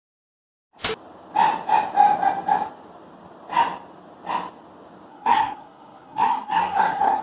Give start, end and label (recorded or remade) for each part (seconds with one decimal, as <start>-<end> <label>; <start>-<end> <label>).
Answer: 0.0-5.1 recorded; 5.1-7.2 remade